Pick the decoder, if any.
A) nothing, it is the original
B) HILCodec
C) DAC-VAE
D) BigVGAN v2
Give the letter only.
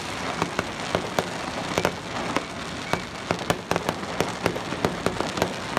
A